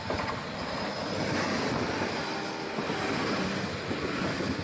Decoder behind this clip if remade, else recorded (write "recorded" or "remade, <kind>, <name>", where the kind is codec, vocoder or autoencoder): remade, vocoder, BigVGAN v2